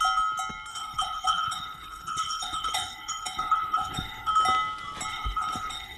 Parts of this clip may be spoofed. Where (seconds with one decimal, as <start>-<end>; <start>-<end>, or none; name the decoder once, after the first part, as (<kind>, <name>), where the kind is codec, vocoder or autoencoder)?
0.7-4.3 (codec, HILCodec); 5.1-6.0